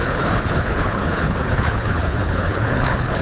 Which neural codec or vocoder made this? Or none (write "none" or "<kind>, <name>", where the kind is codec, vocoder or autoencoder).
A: codec, HILCodec